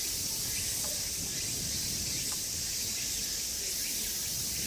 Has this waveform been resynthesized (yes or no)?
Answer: no